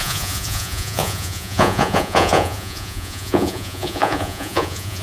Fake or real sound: fake